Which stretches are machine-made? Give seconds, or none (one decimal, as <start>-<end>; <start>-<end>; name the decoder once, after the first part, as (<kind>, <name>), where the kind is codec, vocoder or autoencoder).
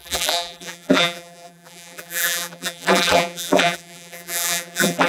0.0-5.1 (vocoder, BigVGAN v2)